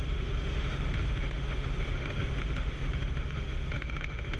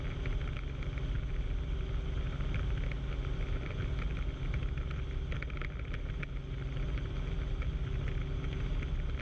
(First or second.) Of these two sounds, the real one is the second